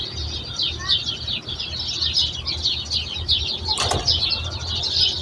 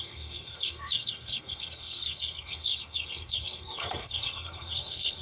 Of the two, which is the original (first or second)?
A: first